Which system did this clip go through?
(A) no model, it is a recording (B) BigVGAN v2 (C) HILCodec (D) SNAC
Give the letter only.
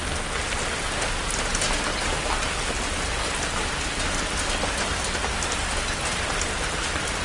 A